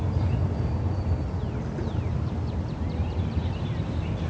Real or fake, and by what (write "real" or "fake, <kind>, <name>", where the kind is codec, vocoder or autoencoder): real